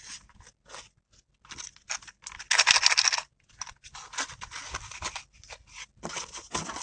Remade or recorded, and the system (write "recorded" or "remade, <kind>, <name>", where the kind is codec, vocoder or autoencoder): recorded